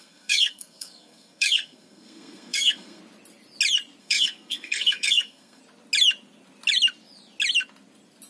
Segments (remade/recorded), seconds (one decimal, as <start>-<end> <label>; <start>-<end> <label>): 0.0-3.0 remade; 3.0-4.0 recorded; 4.0-5.6 remade; 5.6-8.3 recorded